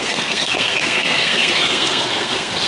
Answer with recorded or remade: remade